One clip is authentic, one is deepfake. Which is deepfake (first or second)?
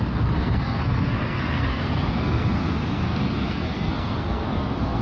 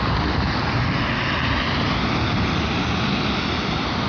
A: first